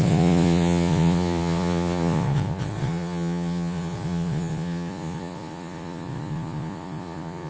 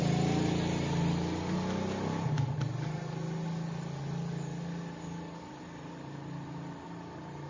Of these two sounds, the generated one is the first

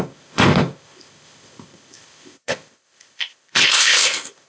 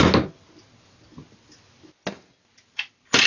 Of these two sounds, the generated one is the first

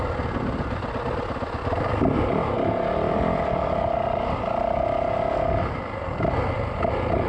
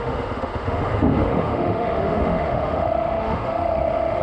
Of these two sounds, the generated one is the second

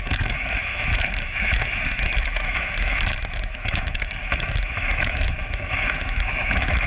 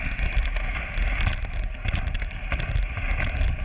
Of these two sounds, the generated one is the first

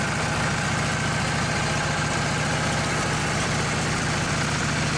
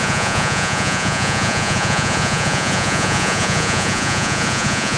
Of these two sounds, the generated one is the second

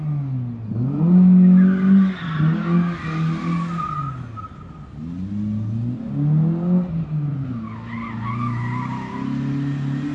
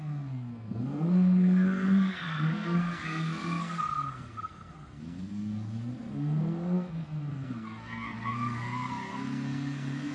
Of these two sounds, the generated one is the second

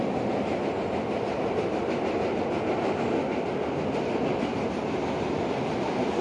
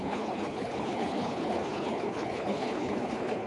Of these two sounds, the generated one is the second